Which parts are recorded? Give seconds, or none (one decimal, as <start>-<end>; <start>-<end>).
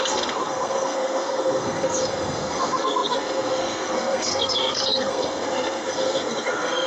none